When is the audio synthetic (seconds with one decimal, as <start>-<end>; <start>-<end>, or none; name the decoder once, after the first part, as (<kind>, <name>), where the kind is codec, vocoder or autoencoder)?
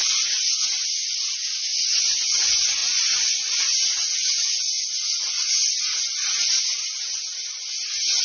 none